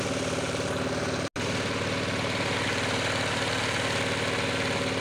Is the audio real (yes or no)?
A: yes